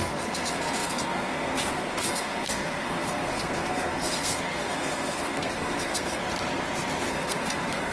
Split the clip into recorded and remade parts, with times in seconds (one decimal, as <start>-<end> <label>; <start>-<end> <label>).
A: 0.0-6.2 remade; 6.2-7.1 recorded; 7.1-7.9 remade